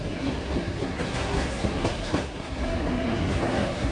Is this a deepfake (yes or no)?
yes